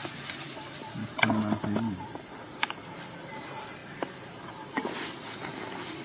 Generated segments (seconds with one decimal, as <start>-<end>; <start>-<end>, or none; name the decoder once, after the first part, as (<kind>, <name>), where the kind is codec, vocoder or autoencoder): none

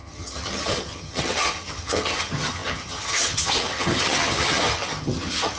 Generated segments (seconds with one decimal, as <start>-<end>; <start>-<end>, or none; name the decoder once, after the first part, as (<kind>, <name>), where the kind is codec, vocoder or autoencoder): 0.0-5.6 (vocoder, HiFi-GAN)

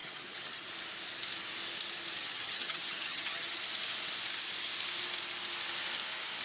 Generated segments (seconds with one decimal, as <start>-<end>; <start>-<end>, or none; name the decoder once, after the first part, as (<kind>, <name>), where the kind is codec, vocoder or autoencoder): 0.0-0.7 (vocoder, HiFi-GAN); 2.2-3.6

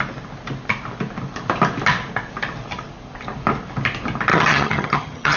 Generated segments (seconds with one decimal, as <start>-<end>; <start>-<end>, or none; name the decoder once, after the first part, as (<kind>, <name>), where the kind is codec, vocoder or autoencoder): 4.3-5.4 (vocoder, HiFi-GAN)

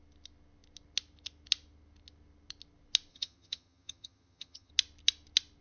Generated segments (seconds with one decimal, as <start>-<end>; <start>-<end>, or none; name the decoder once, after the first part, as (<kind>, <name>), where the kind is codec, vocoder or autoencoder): 3.1-4.7 (vocoder, HiFi-GAN)

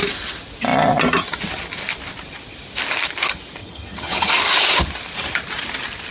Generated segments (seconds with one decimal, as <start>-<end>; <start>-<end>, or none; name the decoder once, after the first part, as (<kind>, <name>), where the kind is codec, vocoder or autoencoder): 3.6-4.3 (vocoder, HiFi-GAN)

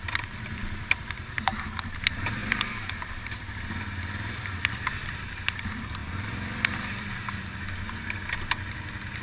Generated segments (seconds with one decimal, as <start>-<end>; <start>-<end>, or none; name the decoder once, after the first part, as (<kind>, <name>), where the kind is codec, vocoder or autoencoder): none